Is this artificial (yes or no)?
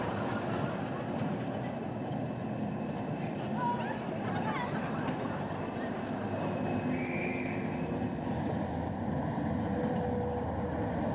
no